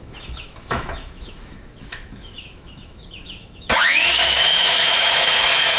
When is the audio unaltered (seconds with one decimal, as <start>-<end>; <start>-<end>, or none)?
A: none